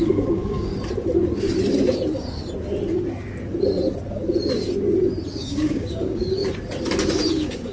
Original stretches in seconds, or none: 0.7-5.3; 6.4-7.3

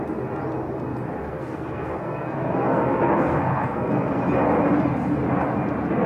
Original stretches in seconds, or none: 0.0-1.2; 4.2-6.1

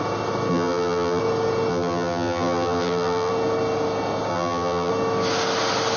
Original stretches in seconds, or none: 0.0-0.5; 1.2-1.7; 3.3-4.3; 4.9-6.0

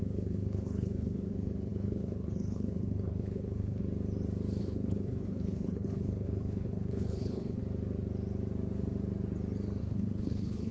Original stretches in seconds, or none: 3.8-4.6; 7.6-9.8

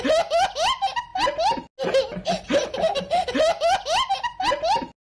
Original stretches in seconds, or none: 0.0-5.0

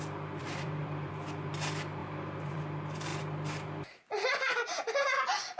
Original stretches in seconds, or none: 0.0-0.4; 1.1-2.0; 2.6-5.6

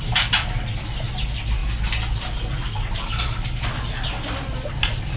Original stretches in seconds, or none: 0.0-5.2

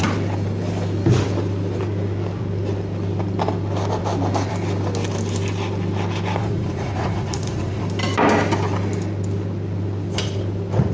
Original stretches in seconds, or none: 0.0-6.4; 7.8-10.9